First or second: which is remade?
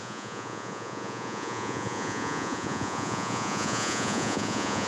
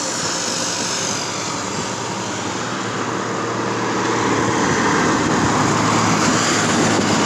first